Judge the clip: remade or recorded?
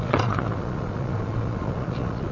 remade